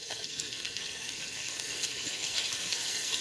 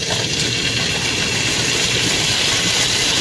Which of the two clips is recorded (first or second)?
second